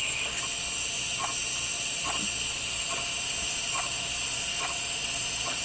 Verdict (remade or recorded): recorded